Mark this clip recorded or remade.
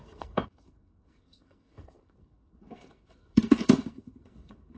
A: remade